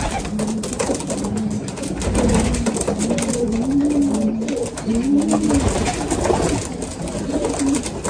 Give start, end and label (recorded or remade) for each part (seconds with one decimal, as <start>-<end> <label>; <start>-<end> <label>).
0.0-8.1 recorded